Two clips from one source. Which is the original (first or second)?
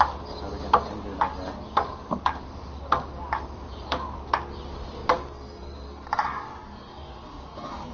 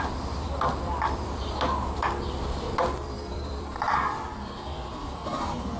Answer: first